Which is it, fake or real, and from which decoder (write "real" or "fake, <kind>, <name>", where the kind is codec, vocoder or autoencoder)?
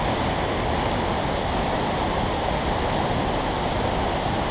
real